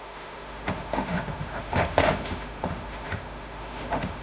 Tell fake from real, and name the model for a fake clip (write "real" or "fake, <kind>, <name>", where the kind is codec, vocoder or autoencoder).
fake, autoencoder, DAC-VAE